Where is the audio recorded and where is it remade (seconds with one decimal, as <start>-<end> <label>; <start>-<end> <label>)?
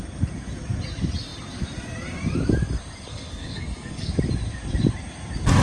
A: 0.0-3.1 recorded; 3.1-4.1 remade; 4.1-5.6 recorded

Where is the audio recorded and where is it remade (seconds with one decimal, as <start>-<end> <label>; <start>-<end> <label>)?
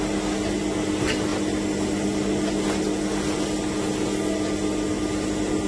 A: 0.0-5.7 recorded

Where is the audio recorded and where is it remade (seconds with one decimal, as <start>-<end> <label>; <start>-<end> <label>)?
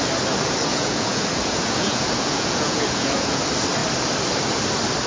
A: 0.0-0.7 recorded; 0.7-3.4 remade; 3.4-5.1 recorded